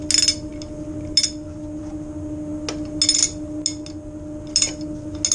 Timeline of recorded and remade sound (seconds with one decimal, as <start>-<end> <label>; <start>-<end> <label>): 0.0-5.3 recorded